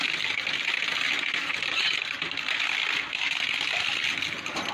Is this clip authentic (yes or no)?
yes